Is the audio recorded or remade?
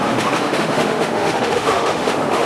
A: remade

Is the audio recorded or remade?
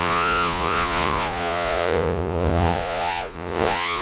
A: remade